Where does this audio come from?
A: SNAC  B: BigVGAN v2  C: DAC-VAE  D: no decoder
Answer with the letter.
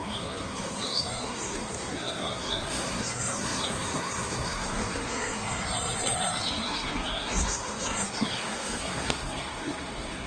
A